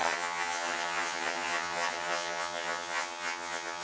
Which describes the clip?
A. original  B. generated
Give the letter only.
B